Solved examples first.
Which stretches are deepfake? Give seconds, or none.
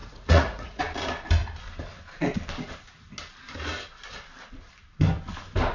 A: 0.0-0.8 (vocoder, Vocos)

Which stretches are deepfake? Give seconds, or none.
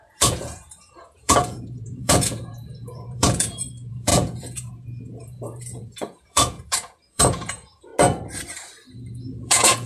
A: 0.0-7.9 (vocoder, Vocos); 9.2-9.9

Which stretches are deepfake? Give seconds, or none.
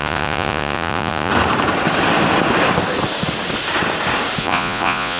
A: 0.0-1.3 (vocoder, Vocos); 4.4-5.2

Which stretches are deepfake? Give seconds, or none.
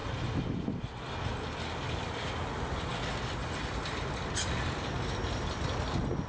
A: none